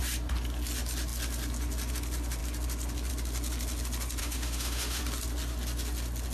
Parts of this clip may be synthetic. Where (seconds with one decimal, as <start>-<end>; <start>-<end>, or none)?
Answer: 4.2-5.0